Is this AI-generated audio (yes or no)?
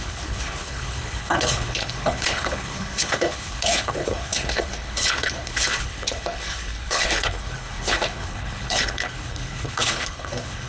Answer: yes